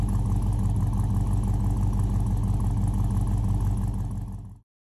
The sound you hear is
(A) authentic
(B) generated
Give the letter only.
A